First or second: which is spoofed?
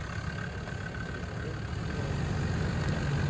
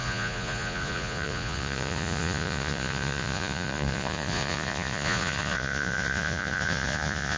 second